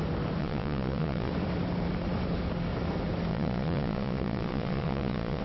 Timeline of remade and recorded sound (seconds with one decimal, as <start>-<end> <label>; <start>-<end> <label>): 0.0-0.4 recorded; 0.4-1.3 remade; 1.3-3.3 recorded; 3.3-5.4 remade